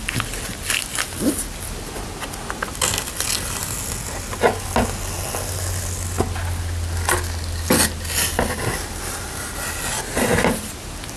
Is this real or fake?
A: real